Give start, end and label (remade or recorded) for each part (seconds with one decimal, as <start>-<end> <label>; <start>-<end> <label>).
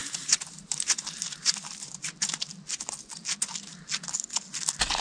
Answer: 0.0-2.0 remade; 2.0-5.0 recorded